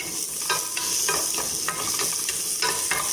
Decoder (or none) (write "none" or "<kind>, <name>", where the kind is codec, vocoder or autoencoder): none